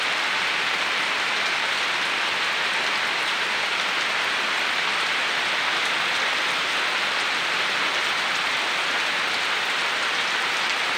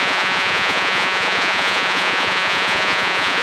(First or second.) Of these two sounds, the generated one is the second